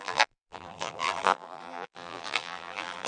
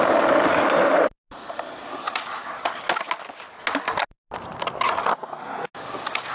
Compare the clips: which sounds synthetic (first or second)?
first